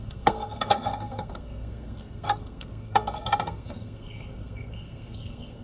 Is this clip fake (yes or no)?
yes